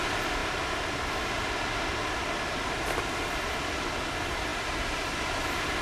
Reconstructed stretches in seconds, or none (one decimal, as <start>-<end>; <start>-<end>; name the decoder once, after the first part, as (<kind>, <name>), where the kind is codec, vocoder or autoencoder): none